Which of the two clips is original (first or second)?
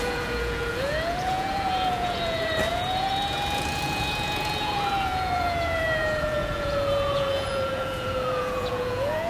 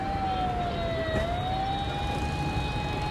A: second